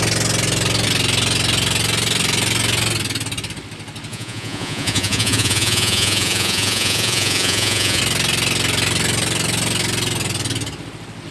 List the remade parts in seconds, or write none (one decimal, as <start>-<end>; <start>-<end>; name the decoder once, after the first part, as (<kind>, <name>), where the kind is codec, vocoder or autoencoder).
4.1-8.0 (vocoder, Vocos)